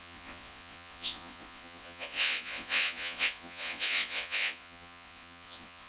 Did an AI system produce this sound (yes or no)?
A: yes